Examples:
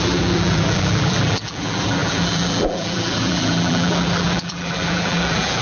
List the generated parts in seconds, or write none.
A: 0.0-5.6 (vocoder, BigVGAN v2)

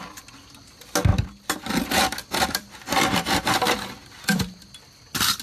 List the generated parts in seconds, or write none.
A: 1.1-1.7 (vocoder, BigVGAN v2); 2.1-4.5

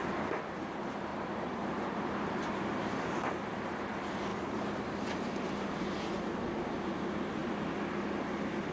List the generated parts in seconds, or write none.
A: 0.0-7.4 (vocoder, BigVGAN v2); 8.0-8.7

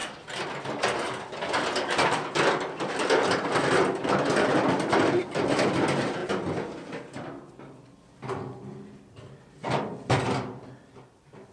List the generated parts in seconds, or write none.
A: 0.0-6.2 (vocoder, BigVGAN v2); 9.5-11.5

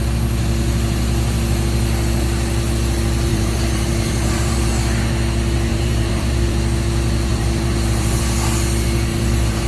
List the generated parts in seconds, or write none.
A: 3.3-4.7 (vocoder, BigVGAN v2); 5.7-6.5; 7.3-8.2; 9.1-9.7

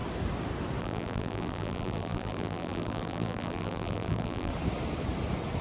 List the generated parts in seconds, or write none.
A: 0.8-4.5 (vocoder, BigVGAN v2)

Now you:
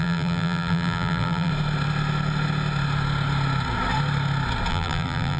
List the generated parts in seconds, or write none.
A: 0.0-1.5 (vocoder, BigVGAN v2); 4.7-5.4

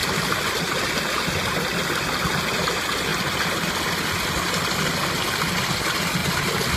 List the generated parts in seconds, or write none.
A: none